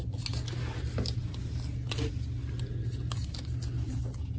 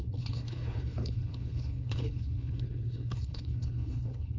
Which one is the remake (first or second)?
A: second